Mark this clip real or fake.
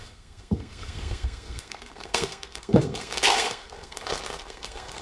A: fake